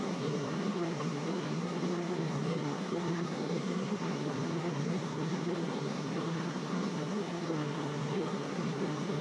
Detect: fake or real fake